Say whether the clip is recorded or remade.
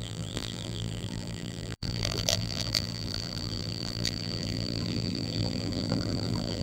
remade